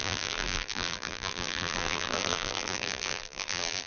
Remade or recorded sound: remade